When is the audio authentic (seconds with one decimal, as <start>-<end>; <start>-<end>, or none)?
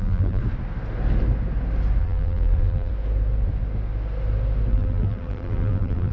0.4-2.0; 2.9-4.7